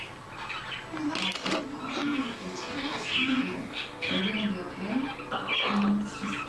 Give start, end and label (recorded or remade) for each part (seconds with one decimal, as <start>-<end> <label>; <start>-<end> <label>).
0.0-1.9 recorded; 1.9-4.2 remade; 4.2-6.5 recorded